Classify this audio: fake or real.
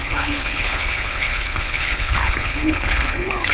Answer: fake